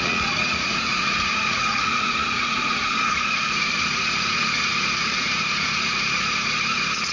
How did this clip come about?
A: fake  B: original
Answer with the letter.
A